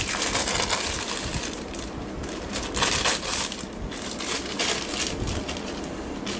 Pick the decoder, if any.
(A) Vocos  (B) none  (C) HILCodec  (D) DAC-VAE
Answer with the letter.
B